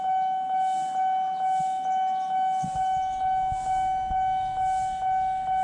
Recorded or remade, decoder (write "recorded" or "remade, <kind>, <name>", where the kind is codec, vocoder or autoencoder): recorded